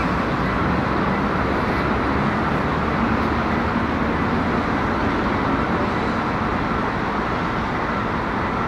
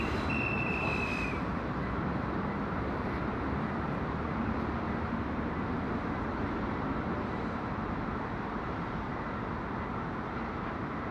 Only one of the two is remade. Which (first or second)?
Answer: second